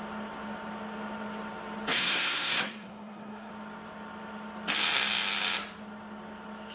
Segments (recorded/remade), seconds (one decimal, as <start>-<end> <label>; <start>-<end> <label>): 0.0-1.9 recorded; 1.9-3.5 remade; 3.5-6.7 recorded